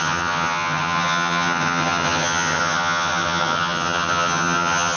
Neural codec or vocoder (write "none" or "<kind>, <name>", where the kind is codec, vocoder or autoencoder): vocoder, HiFi-GAN